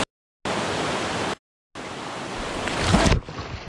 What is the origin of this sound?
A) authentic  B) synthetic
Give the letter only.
A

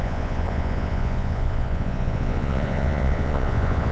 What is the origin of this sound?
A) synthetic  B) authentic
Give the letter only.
A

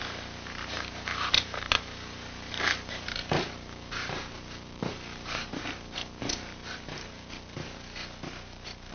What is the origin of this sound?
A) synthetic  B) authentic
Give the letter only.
A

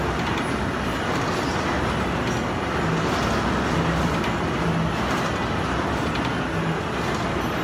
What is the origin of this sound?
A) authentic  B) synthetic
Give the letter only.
A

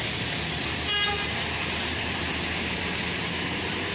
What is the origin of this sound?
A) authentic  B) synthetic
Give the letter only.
A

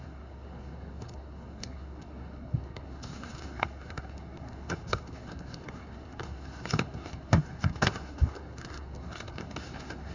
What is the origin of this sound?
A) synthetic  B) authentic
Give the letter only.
A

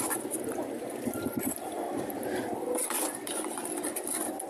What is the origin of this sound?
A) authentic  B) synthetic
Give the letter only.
A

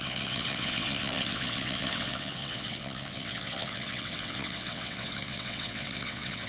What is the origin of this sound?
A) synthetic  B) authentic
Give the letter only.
A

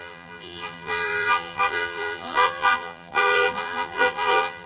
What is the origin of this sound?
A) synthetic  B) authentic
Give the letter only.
A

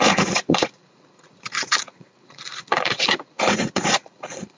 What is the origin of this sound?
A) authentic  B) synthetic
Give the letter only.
B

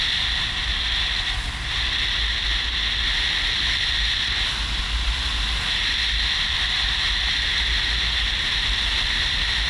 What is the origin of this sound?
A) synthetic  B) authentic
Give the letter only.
B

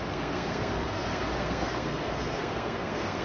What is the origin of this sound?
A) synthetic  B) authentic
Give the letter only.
A